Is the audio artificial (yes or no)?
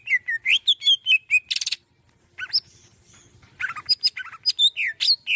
no